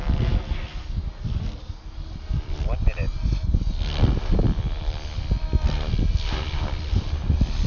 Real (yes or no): yes